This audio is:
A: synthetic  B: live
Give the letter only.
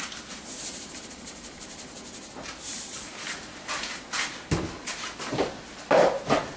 B